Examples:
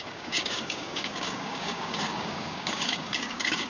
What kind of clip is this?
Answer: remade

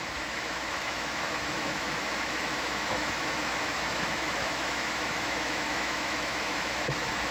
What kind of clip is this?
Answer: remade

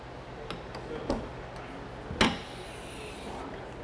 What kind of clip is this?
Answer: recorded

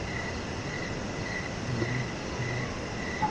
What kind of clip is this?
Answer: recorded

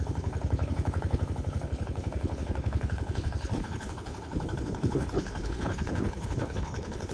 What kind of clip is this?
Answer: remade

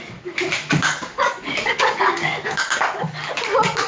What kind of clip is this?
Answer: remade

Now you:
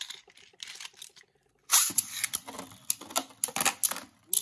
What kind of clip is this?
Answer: recorded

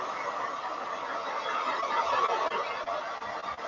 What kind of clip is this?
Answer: recorded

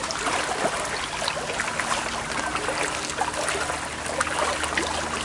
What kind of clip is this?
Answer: recorded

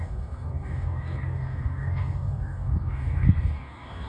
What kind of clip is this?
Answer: remade